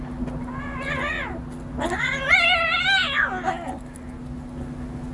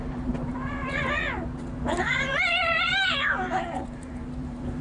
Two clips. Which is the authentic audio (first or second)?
first